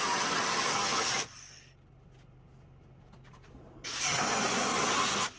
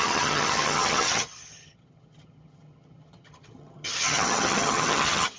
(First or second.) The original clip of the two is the first